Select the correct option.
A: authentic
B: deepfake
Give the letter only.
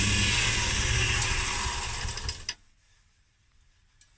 A